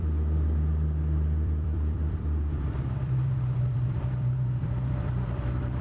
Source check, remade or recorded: remade